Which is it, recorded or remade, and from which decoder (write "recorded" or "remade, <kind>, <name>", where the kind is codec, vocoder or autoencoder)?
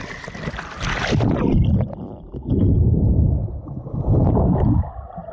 recorded